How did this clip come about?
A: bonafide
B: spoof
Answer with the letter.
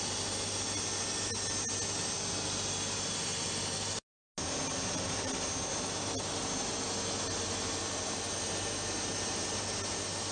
A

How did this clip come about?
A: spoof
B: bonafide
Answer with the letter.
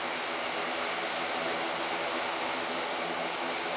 B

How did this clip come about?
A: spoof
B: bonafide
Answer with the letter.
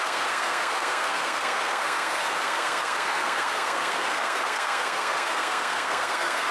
A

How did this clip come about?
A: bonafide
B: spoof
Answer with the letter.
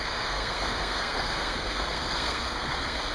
B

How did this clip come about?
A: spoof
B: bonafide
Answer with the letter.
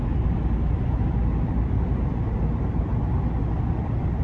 B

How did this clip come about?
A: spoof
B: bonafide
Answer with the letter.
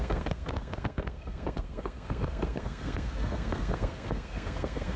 A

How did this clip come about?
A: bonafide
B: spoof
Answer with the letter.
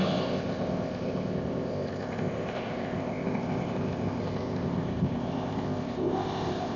B